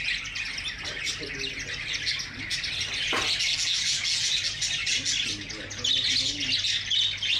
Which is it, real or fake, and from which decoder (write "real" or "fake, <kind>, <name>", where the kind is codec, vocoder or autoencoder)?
real